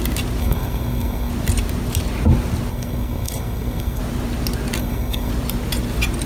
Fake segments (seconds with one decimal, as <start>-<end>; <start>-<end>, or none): 0.4-1.3; 2.7-4.0; 4.8-5.3